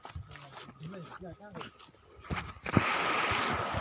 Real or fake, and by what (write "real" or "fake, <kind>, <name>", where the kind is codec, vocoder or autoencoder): real